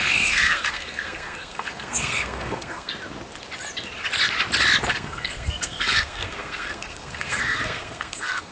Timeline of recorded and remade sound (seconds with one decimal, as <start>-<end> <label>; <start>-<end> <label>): 0.0-2.9 remade; 2.9-4.9 recorded; 4.9-8.5 remade